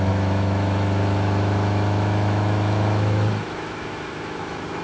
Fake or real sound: fake